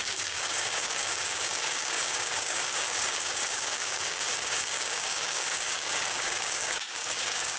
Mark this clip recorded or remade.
remade